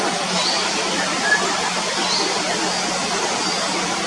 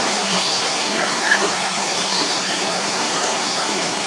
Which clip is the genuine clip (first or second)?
first